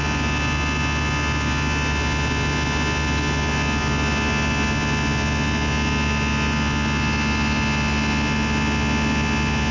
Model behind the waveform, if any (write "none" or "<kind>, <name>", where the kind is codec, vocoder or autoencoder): none